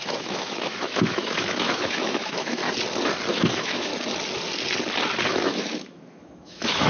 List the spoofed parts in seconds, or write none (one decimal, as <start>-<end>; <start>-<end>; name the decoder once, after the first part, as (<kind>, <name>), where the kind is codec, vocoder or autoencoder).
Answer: 0.0-2.6 (autoencoder, DAC-VAE); 3.3-3.9; 5.3-6.9

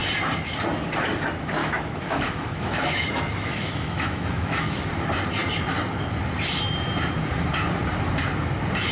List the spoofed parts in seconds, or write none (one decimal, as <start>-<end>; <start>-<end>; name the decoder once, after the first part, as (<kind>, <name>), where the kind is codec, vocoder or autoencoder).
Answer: 1.6-4.9 (autoencoder, DAC-VAE)

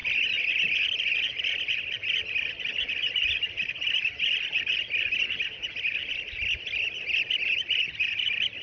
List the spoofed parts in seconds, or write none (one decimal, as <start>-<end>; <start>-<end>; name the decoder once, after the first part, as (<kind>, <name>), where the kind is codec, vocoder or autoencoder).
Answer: none

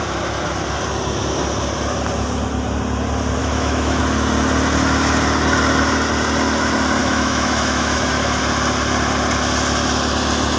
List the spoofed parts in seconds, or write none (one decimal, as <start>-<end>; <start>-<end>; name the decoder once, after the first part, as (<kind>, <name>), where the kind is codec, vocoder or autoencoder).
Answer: 3.4-4.0 (autoencoder, DAC-VAE); 7.0-8.4

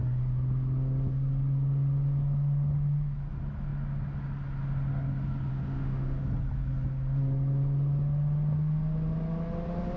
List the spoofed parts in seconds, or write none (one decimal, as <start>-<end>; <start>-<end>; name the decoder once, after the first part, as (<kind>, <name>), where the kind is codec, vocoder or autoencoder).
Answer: 5.5-6.2 (autoencoder, DAC-VAE)

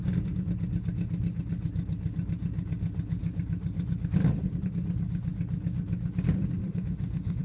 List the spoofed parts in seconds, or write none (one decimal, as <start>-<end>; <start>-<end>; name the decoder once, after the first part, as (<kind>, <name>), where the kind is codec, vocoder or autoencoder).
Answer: 6.6-7.4 (autoencoder, DAC-VAE)

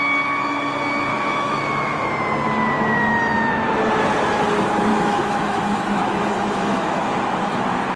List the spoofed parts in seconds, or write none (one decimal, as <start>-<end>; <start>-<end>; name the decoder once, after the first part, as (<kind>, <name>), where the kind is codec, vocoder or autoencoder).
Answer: 1.1-2.1 (autoencoder, DAC-VAE); 4.9-7.6

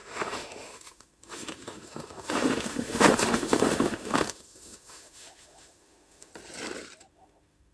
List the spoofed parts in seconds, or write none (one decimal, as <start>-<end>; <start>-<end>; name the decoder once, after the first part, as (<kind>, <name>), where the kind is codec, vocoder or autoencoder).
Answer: 0.0-6.3 (autoencoder, DAC-VAE); 7.1-7.7